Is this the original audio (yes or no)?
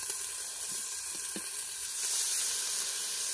yes